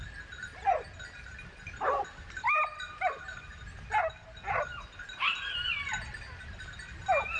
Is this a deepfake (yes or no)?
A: no